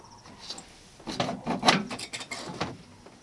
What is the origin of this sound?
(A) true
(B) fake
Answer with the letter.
A